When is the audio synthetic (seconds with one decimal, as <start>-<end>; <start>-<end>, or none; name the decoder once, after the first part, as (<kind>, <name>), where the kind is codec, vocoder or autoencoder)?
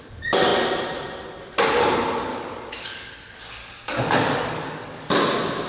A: 2.3-3.1 (codec, DAC); 3.6-5.1